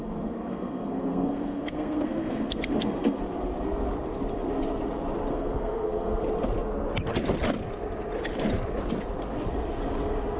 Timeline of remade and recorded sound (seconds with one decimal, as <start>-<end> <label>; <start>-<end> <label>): 0.0-0.5 recorded; 0.5-3.2 remade; 3.2-5.3 recorded; 5.3-6.2 remade; 6.2-10.4 recorded